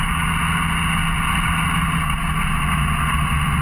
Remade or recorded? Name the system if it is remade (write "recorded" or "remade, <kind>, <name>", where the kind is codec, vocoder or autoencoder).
recorded